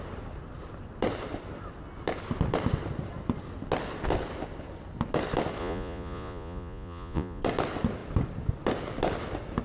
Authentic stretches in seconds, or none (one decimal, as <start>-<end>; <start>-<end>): 0.0-5.6; 7.4-9.6